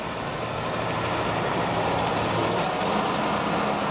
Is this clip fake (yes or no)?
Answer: no